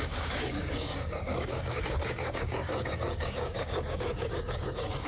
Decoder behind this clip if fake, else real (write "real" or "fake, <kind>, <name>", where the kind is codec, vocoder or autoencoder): fake, codec, DAC